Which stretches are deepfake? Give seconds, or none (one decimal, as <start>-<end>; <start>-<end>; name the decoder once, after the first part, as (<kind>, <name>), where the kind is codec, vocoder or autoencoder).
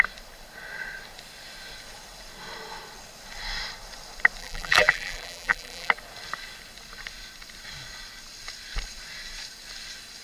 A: 4.4-5.9 (vocoder, BigVGAN v2)